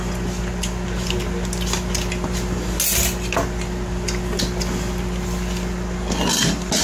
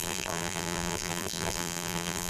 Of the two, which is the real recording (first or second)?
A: first